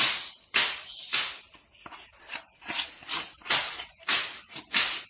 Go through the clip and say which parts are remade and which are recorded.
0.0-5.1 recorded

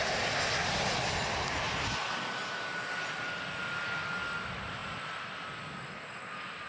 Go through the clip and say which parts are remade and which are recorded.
0.0-6.7 recorded

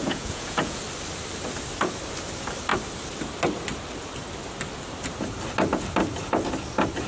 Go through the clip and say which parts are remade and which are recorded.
0.0-0.8 remade; 0.8-7.1 recorded

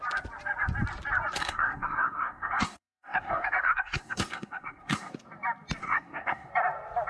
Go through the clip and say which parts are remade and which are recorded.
0.0-1.4 recorded; 1.4-5.1 remade; 5.1-5.8 recorded; 5.8-6.5 remade; 6.5-7.1 recorded

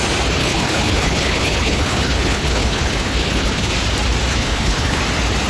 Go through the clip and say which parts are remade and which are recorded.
0.0-0.4 recorded; 0.4-3.7 remade; 3.7-4.3 recorded; 4.3-5.0 remade; 5.0-5.5 recorded

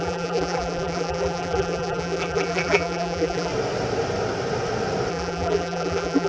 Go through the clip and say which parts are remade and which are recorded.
0.0-3.5 remade; 3.5-5.1 recorded; 5.1-6.3 remade

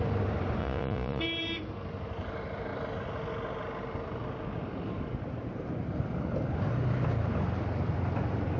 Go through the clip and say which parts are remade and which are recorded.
0.0-0.6 recorded; 0.6-1.2 remade; 1.2-8.6 recorded